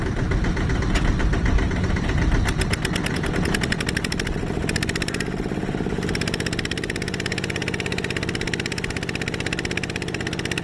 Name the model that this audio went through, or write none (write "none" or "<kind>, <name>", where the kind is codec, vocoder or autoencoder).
none